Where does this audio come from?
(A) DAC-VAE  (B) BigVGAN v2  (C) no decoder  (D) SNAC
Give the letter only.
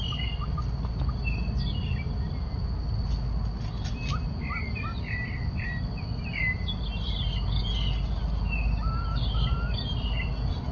C